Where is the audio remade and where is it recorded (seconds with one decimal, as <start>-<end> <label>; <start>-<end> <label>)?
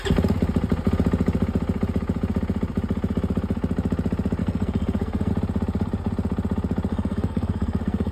0.0-4.4 recorded; 4.4-5.3 remade; 5.3-6.9 recorded; 6.9-8.1 remade